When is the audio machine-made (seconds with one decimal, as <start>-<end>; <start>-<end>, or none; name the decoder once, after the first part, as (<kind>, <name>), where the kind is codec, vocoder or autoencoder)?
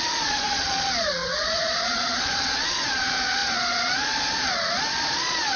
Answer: 0.0-5.6 (vocoder, Vocos)